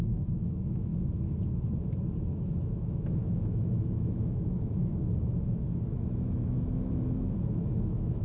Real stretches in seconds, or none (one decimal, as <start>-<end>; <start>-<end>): 0.9-2.2